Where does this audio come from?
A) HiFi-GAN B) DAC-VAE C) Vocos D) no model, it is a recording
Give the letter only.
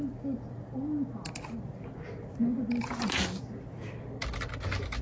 D